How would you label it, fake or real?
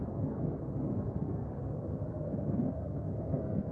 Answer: fake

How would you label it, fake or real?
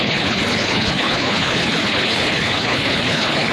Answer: fake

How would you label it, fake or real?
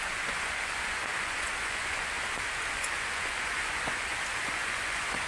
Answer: fake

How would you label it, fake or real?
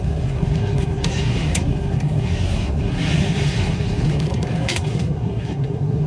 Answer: fake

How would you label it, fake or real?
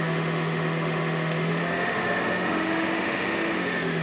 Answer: fake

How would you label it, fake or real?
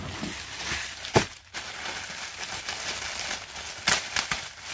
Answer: real